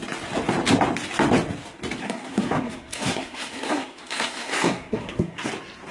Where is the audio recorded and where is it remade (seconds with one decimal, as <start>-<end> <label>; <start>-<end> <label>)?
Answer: 0.0-2.0 recorded; 2.0-5.5 remade; 5.5-5.9 recorded

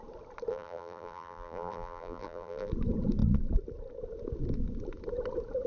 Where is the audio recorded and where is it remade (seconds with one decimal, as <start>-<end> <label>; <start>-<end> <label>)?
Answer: 0.0-0.5 recorded; 0.5-2.7 remade; 2.7-5.7 recorded

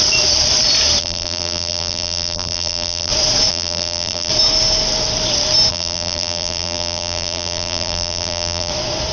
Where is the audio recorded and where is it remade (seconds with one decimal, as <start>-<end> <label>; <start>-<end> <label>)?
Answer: 0.0-1.0 recorded; 1.0-3.1 remade; 3.1-3.5 recorded; 3.5-4.3 remade; 4.3-5.7 recorded; 5.7-8.7 remade; 8.7-9.1 recorded

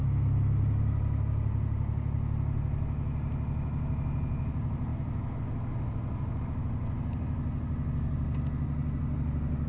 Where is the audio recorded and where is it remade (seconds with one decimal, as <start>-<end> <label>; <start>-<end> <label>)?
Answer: 0.0-9.7 recorded

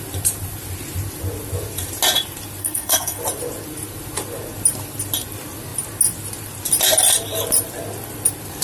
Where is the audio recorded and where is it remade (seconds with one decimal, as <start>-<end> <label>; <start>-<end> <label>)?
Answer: 0.0-2.6 recorded; 2.6-3.2 remade; 3.2-8.6 recorded

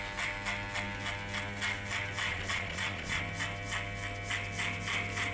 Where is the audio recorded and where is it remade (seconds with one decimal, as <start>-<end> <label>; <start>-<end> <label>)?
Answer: 0.0-2.3 recorded; 2.3-3.2 remade; 3.2-5.3 recorded